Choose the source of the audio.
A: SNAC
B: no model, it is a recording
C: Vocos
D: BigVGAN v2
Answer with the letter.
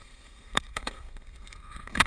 A